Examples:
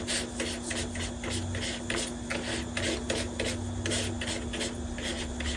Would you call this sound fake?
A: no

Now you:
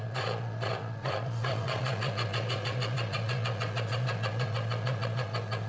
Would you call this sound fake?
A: yes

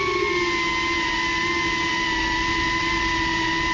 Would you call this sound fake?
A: no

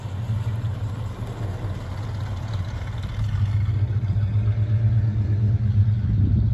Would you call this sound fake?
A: no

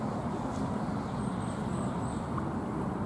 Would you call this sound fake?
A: no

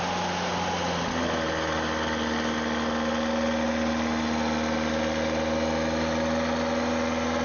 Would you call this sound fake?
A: no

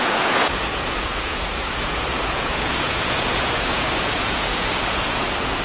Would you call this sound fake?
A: yes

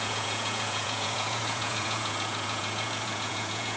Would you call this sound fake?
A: yes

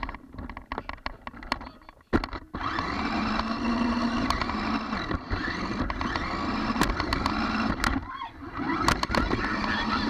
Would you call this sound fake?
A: no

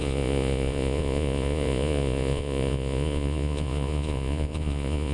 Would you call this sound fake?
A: yes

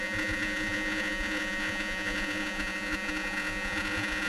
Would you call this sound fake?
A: yes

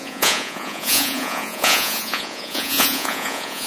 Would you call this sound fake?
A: yes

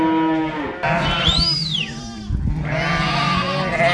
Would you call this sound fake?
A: no